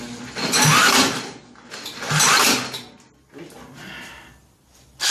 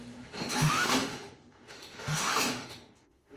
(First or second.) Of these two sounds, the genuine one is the first